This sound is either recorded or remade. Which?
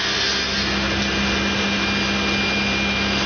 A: recorded